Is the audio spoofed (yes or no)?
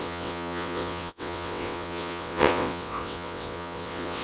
yes